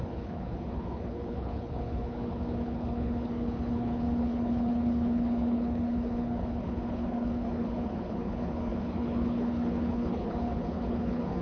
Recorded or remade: remade